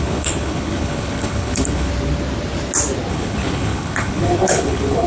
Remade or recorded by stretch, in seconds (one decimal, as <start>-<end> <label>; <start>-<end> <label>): 0.0-1.9 remade; 1.9-3.1 recorded; 3.1-5.1 remade